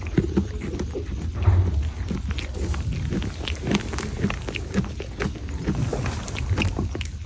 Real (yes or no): yes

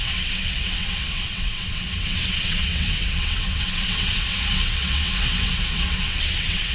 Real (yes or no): no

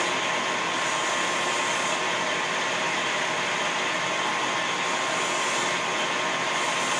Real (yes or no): yes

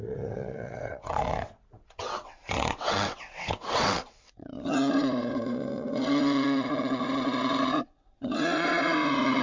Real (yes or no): no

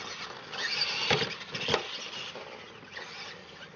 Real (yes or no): yes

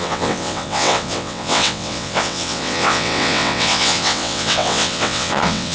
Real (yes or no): no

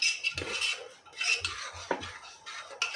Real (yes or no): yes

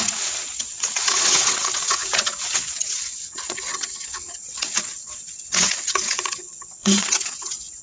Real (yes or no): no